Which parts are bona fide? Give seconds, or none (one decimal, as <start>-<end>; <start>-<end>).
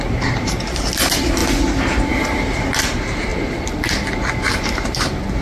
1.4-2.8; 3.3-4.5